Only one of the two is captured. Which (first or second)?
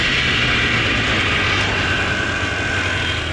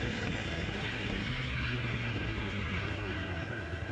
first